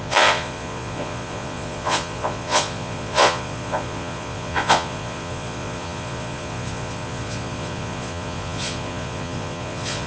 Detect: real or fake fake